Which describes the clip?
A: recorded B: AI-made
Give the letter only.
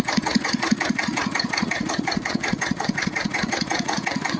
B